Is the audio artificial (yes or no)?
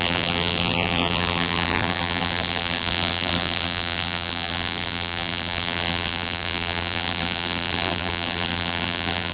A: yes